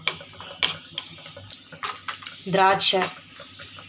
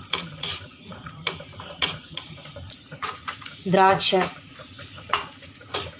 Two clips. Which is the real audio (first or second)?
first